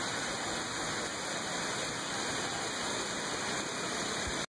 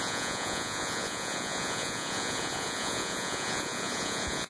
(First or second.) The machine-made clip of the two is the second